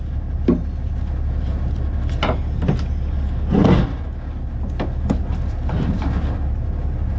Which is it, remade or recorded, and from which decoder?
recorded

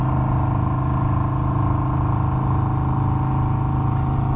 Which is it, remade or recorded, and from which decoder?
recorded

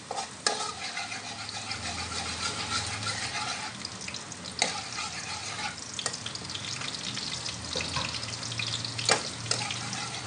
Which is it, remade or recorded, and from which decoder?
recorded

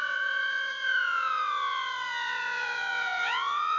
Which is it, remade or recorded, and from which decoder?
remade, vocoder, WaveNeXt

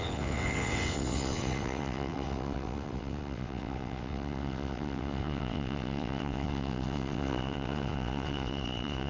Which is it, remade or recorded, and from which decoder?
remade, vocoder, WaveNeXt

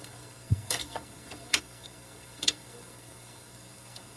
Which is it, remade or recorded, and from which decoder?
remade, codec, SNAC